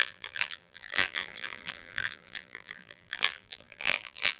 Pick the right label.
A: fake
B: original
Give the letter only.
A